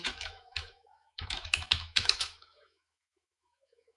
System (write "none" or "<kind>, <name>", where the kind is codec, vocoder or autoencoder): autoencoder, DAC-VAE